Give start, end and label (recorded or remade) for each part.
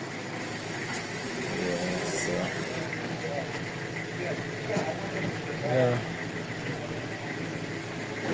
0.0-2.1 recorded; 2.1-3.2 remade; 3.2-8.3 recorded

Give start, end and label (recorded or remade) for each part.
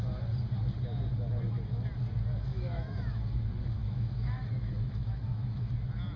0.0-2.5 recorded; 2.5-3.2 remade; 3.2-3.8 recorded; 3.8-5.7 remade; 5.7-6.2 recorded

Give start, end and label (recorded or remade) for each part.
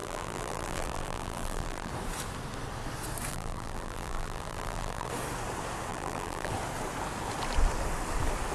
0.0-1.9 remade; 1.9-3.3 recorded; 3.3-5.1 remade; 5.1-5.9 recorded; 5.9-6.5 remade; 6.5-8.5 recorded